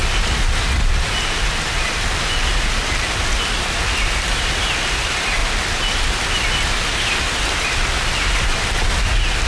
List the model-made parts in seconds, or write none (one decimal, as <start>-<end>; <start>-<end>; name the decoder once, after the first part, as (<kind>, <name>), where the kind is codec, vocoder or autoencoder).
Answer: none